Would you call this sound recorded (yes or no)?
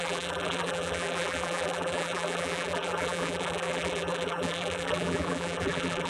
no